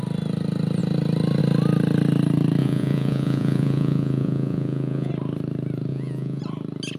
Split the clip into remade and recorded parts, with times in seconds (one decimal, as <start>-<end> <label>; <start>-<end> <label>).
0.0-2.6 recorded; 2.6-5.1 remade; 5.1-5.9 recorded; 5.9-6.4 remade; 6.4-7.0 recorded